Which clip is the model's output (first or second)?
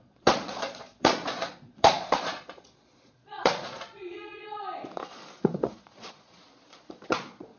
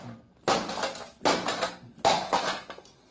first